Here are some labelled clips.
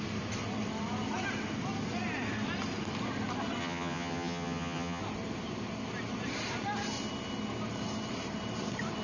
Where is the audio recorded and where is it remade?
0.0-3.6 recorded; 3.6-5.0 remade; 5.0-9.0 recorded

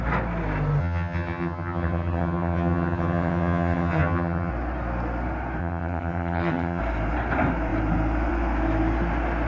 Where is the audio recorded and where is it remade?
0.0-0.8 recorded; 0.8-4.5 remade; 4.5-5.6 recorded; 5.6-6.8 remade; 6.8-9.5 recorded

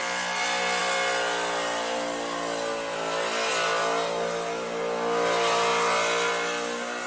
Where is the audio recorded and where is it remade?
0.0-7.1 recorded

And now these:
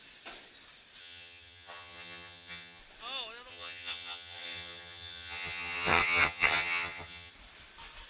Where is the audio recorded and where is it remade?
0.0-1.0 recorded; 1.0-2.8 remade; 2.8-3.5 recorded; 3.5-7.3 remade; 7.3-8.1 recorded

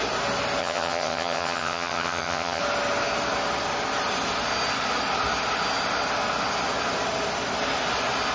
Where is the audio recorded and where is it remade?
0.0-0.6 recorded; 0.6-2.6 remade; 2.6-8.3 recorded

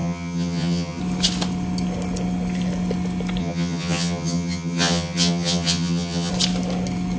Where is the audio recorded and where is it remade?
0.0-1.0 remade; 1.0-3.4 recorded; 3.4-6.3 remade; 6.3-7.2 recorded

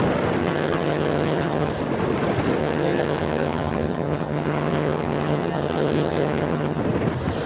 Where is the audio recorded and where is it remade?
0.0-0.4 recorded; 0.4-1.7 remade; 1.7-2.6 recorded; 2.6-6.8 remade; 6.8-7.5 recorded

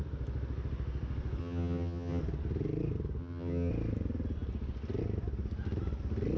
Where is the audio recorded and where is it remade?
0.0-1.4 recorded; 1.4-2.2 remade; 2.2-3.2 recorded; 3.2-3.7 remade; 3.7-6.4 recorded